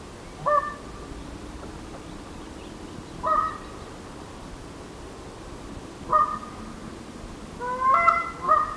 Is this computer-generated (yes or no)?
no